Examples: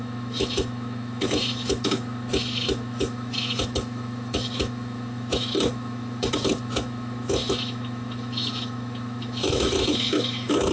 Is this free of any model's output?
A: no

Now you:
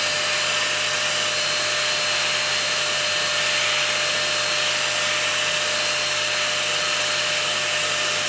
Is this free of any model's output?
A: yes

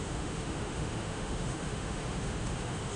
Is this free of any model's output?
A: no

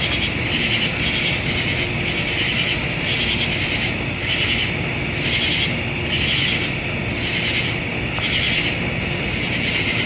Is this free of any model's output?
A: yes